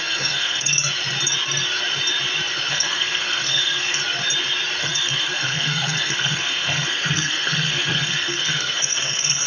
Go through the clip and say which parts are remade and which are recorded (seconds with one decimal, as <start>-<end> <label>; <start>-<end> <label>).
0.0-0.7 remade; 0.7-2.7 recorded; 2.7-4.0 remade; 4.0-4.8 recorded; 4.8-9.5 remade